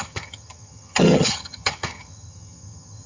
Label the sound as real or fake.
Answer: fake